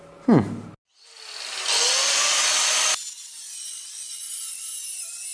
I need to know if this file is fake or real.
real